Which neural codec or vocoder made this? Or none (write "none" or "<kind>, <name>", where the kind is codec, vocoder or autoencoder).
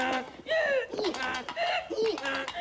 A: none